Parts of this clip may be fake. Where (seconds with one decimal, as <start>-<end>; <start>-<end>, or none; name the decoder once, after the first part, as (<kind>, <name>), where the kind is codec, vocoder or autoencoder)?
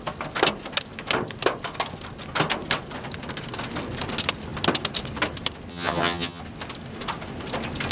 5.7-6.4 (vocoder, HiFi-GAN)